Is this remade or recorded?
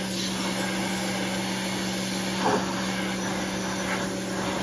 recorded